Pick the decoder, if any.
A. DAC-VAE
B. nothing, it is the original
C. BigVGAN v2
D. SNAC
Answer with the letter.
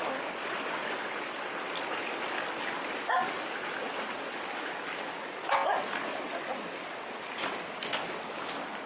B